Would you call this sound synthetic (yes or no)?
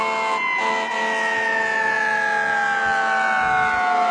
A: no